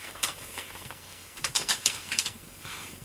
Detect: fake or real fake